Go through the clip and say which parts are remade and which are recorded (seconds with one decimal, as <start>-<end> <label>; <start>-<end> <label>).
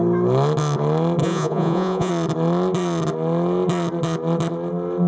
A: 0.0-1.2 recorded; 1.2-2.1 remade; 2.1-5.1 recorded